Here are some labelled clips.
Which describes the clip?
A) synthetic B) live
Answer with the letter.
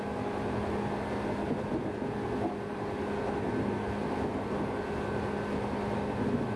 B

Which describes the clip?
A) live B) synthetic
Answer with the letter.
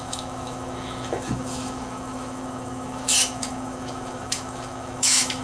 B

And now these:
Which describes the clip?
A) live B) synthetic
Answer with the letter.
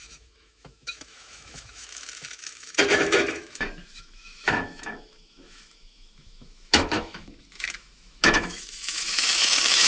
B